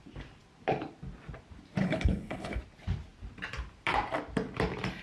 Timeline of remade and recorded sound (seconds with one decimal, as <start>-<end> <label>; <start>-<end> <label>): 0.0-1.8 recorded; 1.8-2.6 remade; 2.6-5.0 recorded